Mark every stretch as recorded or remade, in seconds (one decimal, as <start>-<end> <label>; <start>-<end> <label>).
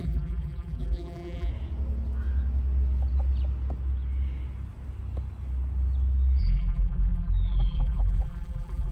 0.0-1.5 remade; 1.5-6.4 recorded; 6.4-8.9 remade